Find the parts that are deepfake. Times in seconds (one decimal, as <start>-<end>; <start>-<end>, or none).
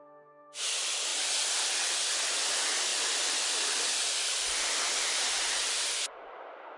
none